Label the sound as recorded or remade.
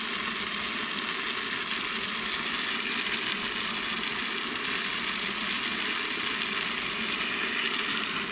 recorded